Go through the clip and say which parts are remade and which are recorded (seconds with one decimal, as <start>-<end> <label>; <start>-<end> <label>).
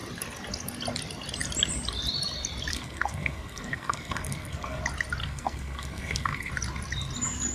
0.0-2.7 recorded; 2.7-4.8 remade; 4.8-5.2 recorded; 5.2-6.5 remade; 6.5-7.5 recorded